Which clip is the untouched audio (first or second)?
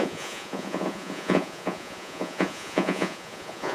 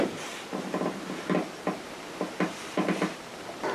second